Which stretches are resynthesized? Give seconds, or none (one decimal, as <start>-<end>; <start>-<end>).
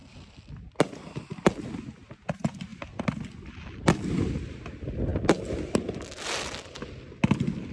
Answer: none